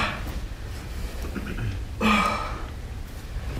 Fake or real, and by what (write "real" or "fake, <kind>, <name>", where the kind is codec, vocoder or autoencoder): real